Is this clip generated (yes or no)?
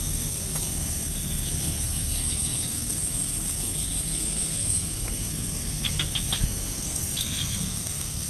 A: yes